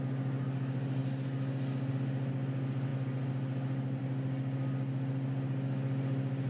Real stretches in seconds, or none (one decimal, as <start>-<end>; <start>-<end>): 0.0-6.5